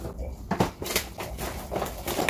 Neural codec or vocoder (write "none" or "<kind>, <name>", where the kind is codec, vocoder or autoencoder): none